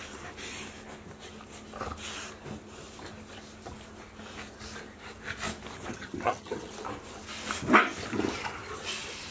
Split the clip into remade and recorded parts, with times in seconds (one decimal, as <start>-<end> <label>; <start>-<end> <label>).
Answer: 0.0-5.9 recorded; 5.9-6.7 remade; 6.7-9.3 recorded

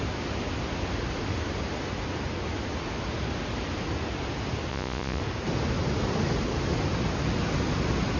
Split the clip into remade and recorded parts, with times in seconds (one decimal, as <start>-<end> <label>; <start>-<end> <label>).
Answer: 0.0-4.7 recorded; 4.7-5.2 remade; 5.2-8.2 recorded

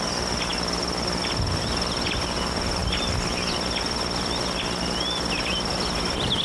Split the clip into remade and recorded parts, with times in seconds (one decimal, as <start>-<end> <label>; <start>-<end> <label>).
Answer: 0.0-6.4 recorded

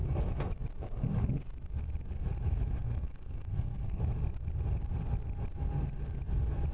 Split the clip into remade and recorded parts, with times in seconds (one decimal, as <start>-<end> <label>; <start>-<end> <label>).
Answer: 0.0-2.8 recorded; 2.8-4.0 remade; 4.0-6.7 recorded